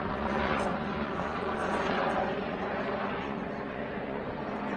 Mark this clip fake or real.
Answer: fake